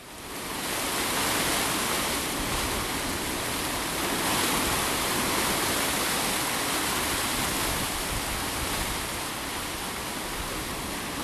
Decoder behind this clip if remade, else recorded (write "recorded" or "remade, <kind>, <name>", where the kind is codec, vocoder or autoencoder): recorded